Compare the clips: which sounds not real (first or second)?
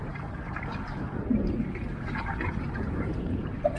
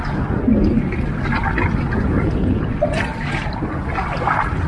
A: first